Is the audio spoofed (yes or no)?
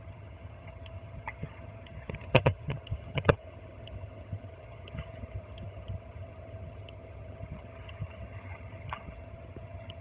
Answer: yes